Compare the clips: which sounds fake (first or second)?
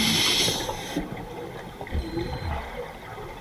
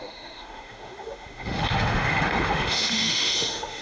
second